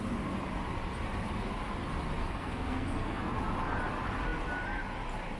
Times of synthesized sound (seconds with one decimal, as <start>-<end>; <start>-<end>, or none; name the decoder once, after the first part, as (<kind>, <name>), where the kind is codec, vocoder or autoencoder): 2.2-3.2 (codec, SNAC)